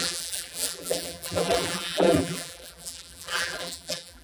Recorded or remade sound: remade